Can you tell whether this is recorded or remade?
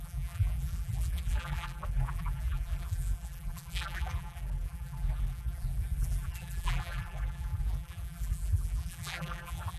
remade